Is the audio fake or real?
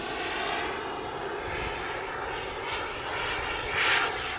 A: real